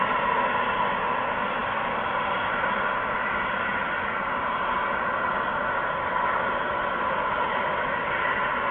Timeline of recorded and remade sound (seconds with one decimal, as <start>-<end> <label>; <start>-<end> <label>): 0.0-8.7 recorded